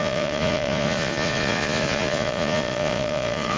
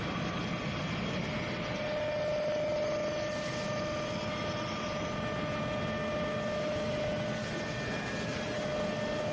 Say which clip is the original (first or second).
second